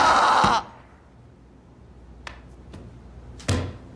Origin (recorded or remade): recorded